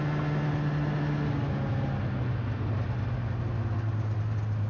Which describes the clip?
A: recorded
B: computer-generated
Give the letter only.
A